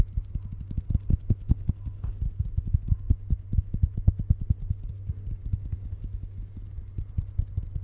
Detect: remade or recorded recorded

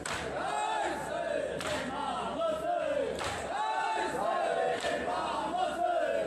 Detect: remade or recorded recorded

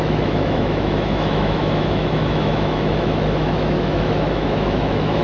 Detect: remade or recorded remade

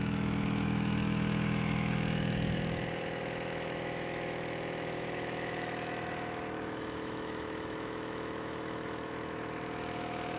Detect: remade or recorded remade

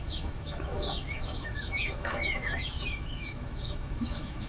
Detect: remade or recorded remade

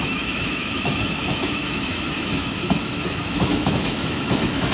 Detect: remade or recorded remade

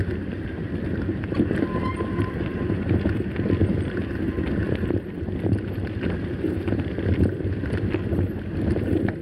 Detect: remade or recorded recorded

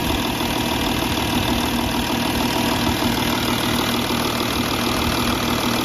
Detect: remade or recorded recorded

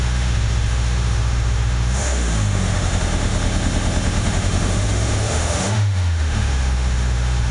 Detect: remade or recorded remade